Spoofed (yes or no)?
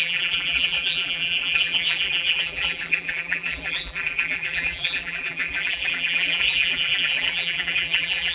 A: yes